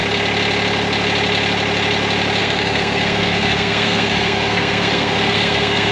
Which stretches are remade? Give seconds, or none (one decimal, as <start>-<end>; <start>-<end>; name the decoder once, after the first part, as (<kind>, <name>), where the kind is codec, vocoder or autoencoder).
2.4-5.9 (codec, SNAC)